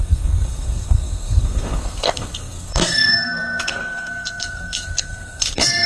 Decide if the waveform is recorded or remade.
remade